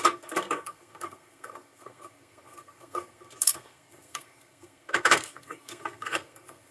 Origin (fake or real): fake